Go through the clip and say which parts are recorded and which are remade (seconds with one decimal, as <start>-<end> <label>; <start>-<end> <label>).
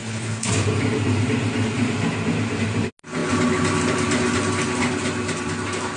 0.0-0.5 remade; 0.5-6.0 recorded